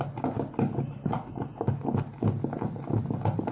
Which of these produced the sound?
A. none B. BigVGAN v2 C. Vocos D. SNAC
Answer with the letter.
A